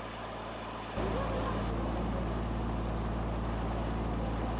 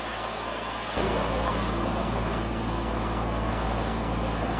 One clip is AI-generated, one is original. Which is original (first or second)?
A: first